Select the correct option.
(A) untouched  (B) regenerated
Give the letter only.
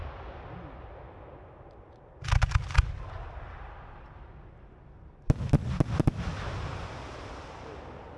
A